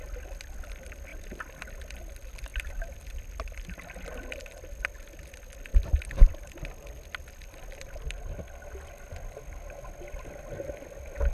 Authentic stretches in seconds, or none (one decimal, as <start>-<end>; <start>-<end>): 0.0-11.3